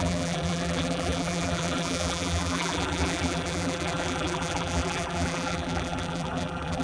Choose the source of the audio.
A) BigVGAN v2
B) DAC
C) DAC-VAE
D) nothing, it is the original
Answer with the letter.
A